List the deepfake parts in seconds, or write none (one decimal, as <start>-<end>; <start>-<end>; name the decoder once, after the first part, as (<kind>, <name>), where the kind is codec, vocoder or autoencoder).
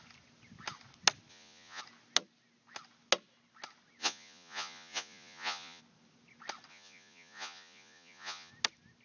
1.3-1.8 (vocoder, Vocos); 4.0-5.8; 6.7-8.5